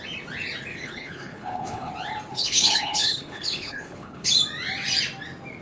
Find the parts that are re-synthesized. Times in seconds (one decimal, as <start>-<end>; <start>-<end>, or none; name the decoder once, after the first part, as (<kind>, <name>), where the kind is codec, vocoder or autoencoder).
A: 0.7-1.9 (codec, HILCodec); 2.3-4.3